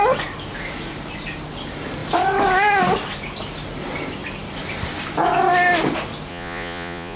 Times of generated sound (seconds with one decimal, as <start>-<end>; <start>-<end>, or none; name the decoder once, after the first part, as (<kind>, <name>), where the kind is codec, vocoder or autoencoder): 6.3-7.2 (vocoder, Vocos)